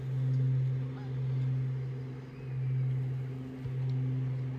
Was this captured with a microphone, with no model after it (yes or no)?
yes